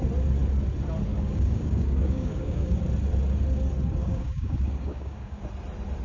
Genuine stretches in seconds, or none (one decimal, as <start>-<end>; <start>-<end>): 0.0-1.1; 2.8-4.0; 5.5-6.0